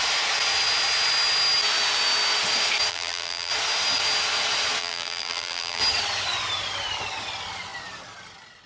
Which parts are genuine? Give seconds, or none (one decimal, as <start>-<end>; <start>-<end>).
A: 0.0-2.9; 3.5-4.8; 5.8-8.7